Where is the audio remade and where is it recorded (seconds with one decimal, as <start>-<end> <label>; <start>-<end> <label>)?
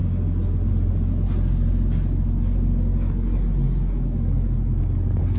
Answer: 0.0-5.4 recorded